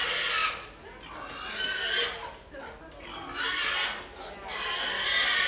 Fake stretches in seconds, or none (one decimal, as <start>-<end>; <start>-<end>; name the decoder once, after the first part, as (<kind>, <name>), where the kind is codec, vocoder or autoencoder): none